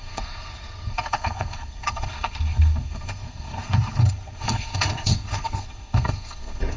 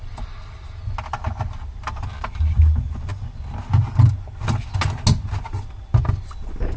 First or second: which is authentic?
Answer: second